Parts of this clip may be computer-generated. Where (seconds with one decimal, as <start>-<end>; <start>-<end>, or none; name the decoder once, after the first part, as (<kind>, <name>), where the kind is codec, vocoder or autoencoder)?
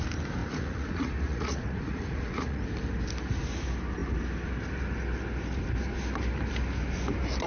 0.4-2.6 (vocoder, Vocos)